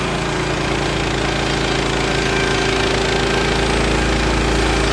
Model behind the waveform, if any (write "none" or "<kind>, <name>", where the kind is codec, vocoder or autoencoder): none